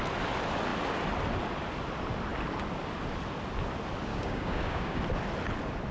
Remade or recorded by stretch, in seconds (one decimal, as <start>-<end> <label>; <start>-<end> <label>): 0.0-4.1 recorded; 4.1-5.0 remade; 5.0-5.9 recorded